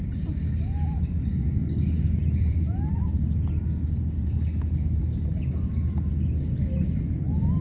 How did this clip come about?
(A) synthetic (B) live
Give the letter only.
B